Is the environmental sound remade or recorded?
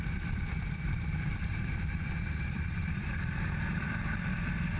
remade